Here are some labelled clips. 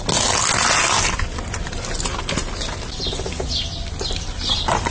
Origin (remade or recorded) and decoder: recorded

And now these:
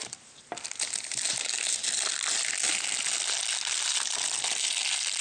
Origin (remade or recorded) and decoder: recorded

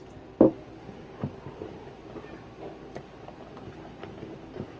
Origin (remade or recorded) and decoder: recorded